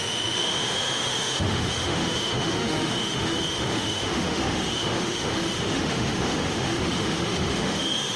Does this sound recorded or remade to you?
remade